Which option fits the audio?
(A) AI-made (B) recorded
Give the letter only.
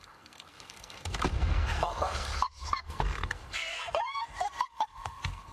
A